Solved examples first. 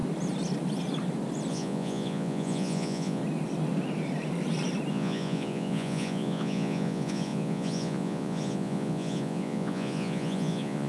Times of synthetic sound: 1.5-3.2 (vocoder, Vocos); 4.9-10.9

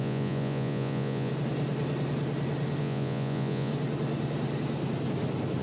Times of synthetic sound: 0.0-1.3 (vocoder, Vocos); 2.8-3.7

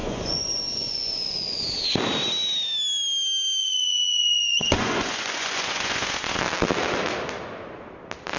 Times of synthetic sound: 0.0-1.6 (vocoder, Vocos); 3.6-6.4

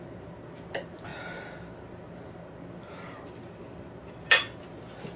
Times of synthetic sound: none

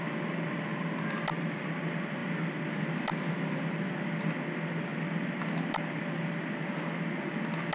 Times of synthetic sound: none

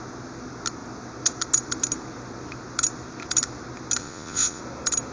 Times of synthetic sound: 4.0-4.6 (vocoder, Vocos)

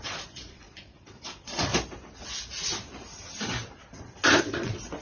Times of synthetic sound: 0.0-1.7 (vocoder, Vocos); 4.4-5.0

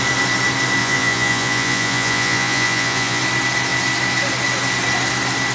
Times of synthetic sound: 0.8-3.2 (vocoder, Vocos)